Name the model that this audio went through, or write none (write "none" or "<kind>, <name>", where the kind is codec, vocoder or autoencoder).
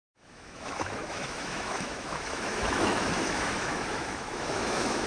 autoencoder, DAC-VAE